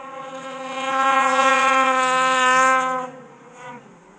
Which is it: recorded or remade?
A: remade